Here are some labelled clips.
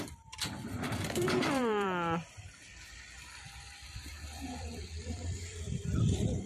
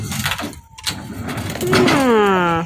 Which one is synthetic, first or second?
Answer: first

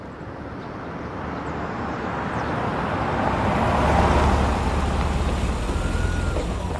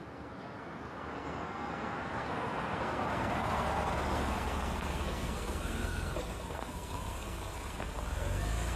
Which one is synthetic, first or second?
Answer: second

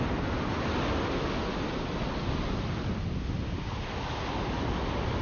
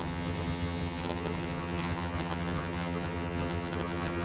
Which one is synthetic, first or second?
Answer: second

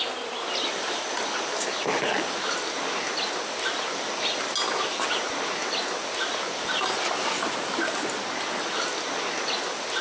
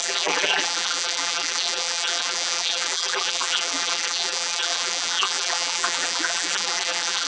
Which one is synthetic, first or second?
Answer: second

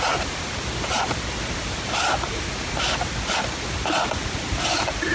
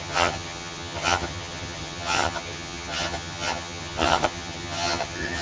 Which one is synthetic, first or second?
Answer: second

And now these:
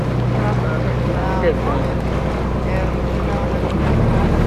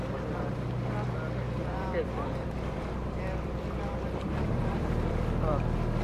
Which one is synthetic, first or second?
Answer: second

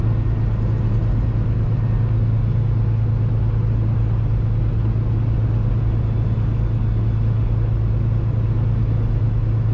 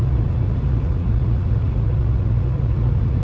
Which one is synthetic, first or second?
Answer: second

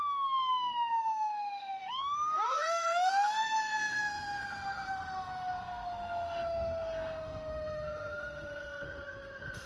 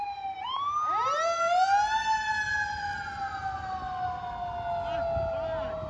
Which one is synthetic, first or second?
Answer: first